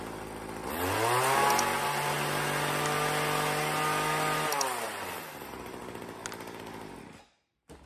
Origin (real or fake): real